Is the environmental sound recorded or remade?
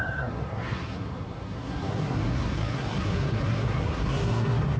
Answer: remade